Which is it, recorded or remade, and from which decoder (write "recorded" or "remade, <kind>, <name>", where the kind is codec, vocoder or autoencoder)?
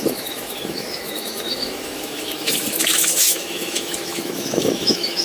remade, autoencoder, DAC-VAE